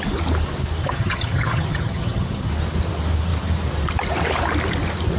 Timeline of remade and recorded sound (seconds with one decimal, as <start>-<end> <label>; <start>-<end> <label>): 0.0-0.8 recorded; 0.8-2.5 remade; 2.5-5.2 recorded